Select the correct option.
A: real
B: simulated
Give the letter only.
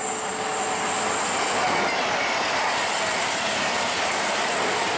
A